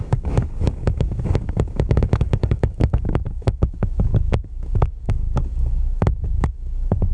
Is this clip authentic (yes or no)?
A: no